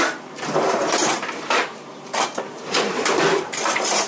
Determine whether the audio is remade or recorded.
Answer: remade